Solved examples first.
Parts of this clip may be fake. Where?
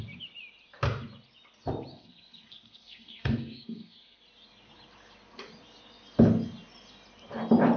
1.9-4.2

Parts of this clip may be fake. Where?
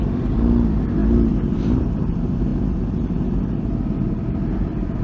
0.0-5.0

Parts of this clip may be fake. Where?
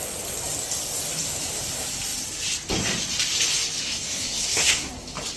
3.8-4.9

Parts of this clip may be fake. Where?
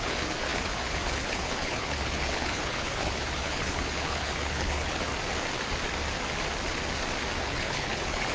0.0-5.1; 7.4-8.3